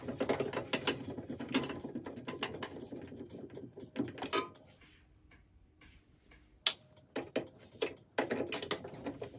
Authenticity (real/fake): real